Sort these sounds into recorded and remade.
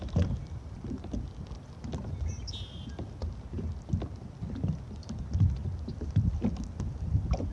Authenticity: recorded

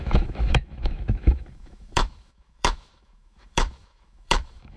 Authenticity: remade